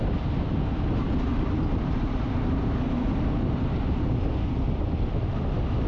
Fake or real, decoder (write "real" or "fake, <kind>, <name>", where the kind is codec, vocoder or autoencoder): real